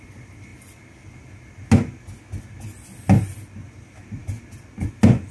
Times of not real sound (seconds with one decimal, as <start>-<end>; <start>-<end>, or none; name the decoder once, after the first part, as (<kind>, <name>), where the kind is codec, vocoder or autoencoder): none

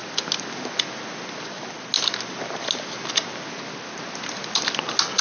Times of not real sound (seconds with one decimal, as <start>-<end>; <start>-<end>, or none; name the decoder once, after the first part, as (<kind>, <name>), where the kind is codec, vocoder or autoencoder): none

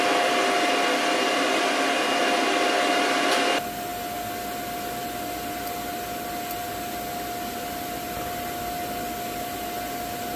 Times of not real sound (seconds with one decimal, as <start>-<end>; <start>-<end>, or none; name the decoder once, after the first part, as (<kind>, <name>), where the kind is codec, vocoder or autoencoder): none

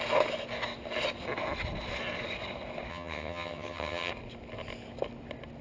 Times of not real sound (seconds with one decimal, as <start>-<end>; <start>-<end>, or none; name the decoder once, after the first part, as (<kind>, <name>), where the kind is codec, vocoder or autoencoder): 2.9-4.1 (vocoder, HiFi-GAN)